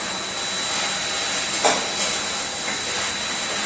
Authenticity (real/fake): real